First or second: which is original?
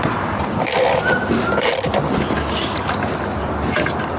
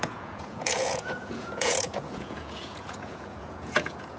first